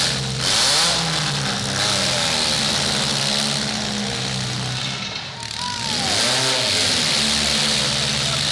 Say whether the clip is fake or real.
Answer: real